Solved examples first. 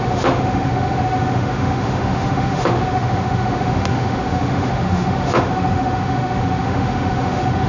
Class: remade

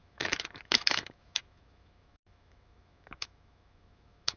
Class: remade